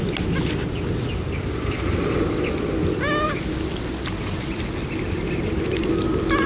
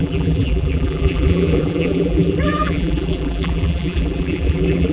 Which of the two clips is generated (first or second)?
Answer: second